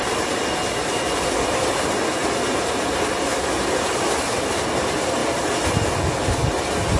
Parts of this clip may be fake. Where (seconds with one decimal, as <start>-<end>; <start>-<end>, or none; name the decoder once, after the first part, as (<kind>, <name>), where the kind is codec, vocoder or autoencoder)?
0.0-2.2 (vocoder, BigVGAN v2); 4.2-5.2; 6.1-7.0

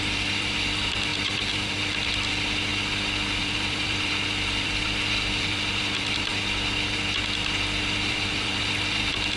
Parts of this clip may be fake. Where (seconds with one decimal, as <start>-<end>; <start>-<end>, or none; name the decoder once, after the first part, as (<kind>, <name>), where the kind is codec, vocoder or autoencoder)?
0.0-2.7 (vocoder, BigVGAN v2); 3.4-6.3; 7.8-9.4

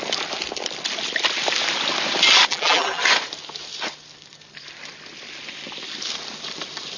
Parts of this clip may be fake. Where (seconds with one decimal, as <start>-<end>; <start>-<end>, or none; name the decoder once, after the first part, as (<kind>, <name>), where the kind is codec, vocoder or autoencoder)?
2.5-3.0 (vocoder, BigVGAN v2)

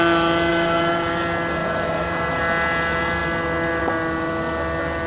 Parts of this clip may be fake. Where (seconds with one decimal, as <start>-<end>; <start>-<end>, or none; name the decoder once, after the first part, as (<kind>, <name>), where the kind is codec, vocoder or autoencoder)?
0.5-1.2 (vocoder, BigVGAN v2); 1.6-2.4

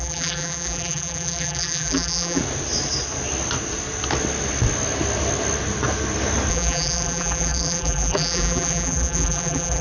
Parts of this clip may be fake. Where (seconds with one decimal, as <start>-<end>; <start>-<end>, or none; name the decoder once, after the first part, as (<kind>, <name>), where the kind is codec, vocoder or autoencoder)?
0.0-2.4 (vocoder, BigVGAN v2); 6.5-9.8

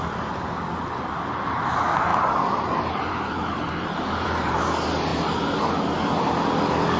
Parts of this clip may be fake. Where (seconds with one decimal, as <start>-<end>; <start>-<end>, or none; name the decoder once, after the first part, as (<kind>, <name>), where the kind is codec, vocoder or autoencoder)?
2.1-4.6 (vocoder, BigVGAN v2)